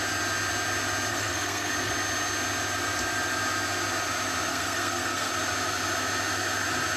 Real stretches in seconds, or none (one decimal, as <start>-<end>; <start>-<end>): 0.0-1.1; 1.7-4.5; 5.3-7.0